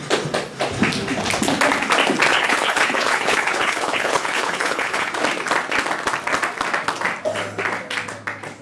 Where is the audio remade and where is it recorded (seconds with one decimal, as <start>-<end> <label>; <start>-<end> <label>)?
0.0-2.3 recorded; 2.3-5.1 remade; 5.1-8.6 recorded